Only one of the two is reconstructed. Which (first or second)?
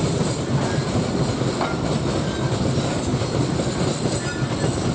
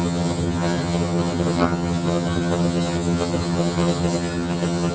second